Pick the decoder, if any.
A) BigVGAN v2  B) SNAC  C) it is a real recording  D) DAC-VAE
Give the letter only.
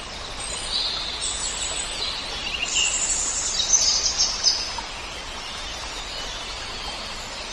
C